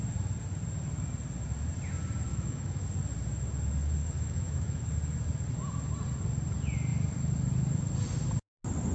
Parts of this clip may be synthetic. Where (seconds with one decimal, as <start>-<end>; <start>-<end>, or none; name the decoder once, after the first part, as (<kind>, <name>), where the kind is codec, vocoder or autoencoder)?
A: 2.3-2.8 (autoencoder, DAC-VAE); 4.0-4.8